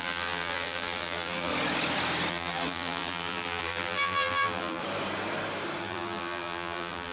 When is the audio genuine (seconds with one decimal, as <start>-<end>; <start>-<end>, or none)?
1.5-2.3; 4.8-5.8